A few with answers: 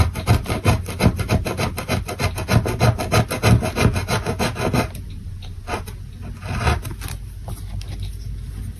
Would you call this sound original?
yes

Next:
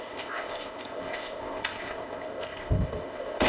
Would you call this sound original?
no